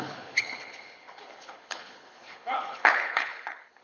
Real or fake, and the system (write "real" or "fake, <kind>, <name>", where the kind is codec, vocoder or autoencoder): fake, codec, HILCodec